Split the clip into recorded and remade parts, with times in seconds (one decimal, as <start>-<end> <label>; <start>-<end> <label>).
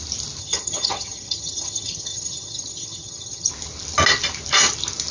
0.0-0.4 recorded; 0.4-3.5 remade; 3.5-5.1 recorded